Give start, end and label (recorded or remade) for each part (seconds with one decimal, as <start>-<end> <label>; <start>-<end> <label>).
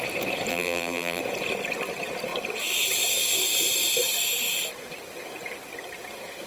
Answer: 0.0-0.5 recorded; 0.5-1.2 remade; 1.2-6.5 recorded